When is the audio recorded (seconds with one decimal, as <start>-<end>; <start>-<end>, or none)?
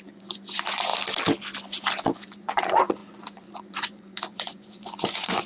0.9-1.9